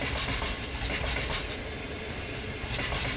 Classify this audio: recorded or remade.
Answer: recorded